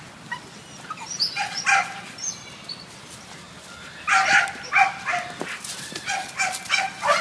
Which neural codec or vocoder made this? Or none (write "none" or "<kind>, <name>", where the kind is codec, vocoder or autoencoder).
none